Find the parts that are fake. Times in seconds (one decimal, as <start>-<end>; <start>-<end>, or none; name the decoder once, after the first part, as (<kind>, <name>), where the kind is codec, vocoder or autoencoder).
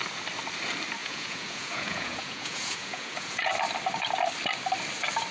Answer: 1.0-3.5 (vocoder, Vocos)